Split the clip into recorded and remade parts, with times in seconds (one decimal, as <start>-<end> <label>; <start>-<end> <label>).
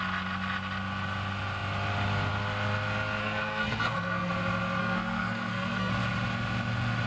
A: 0.0-3.2 recorded; 3.2-4.3 remade; 4.3-4.8 recorded; 4.8-5.9 remade; 5.9-7.1 recorded